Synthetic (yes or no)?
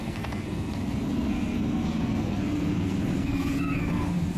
yes